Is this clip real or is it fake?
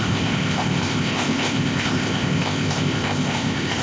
fake